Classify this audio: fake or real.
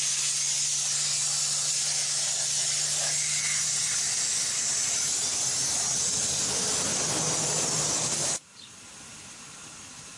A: real